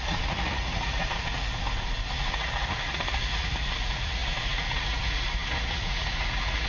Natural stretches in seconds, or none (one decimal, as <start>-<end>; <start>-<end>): 1.5-2.1